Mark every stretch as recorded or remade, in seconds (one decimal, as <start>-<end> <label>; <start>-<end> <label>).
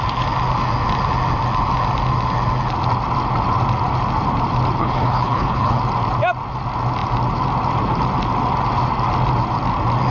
0.0-4.8 recorded; 4.8-5.8 remade; 5.8-10.1 recorded